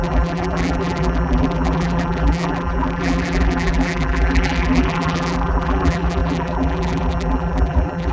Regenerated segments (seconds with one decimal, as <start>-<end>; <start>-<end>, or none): 0.0-8.1